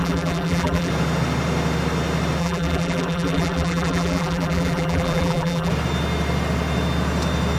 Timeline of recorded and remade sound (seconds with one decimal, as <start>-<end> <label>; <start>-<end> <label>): 0.0-0.9 remade; 0.9-2.4 recorded; 2.4-5.7 remade; 5.7-7.6 recorded